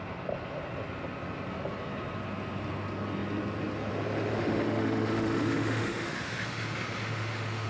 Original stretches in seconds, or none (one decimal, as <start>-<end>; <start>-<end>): 0.0-4.3